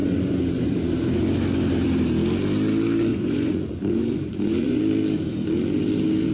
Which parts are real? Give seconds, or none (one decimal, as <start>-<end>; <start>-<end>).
0.0-3.1; 4.8-6.3